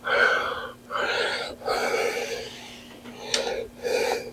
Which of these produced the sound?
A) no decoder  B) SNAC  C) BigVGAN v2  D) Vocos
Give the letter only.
A